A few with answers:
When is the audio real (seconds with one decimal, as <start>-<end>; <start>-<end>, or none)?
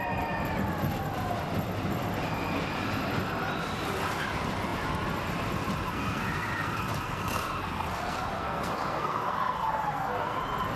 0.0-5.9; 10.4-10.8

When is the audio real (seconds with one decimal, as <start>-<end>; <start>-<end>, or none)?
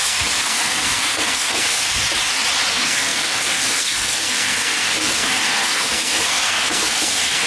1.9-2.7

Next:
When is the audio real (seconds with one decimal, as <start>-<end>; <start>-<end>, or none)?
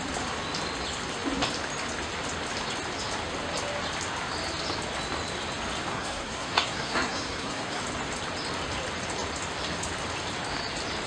0.0-5.9; 7.8-11.1